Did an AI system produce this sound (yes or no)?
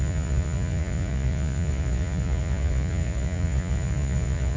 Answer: yes